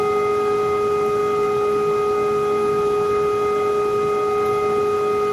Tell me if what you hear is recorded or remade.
recorded